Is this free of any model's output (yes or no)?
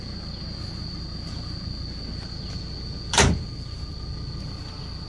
yes